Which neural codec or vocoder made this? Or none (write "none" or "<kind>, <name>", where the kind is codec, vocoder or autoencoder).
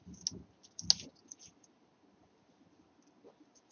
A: none